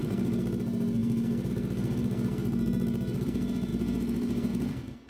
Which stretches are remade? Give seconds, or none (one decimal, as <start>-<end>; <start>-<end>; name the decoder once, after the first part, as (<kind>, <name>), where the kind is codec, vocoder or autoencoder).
0.0-5.1 (codec, SNAC)